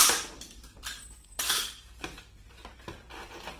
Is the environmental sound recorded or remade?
recorded